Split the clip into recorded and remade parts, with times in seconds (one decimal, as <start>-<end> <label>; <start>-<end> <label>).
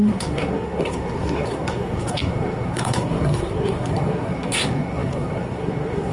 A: 0.0-6.1 remade